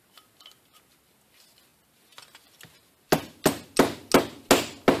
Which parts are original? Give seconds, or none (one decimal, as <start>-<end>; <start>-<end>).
0.0-5.0